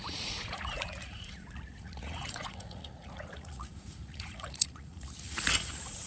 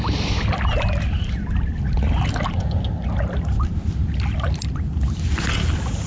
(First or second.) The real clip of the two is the second